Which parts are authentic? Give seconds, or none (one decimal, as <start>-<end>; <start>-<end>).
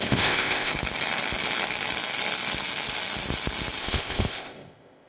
0.7-3.8